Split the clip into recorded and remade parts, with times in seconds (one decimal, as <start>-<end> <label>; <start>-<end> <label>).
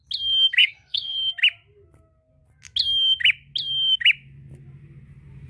0.0-0.6 recorded; 0.6-1.3 remade; 1.3-5.5 recorded